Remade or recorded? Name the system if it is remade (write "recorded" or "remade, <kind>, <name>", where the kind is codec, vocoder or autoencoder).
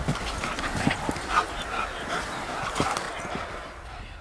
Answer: recorded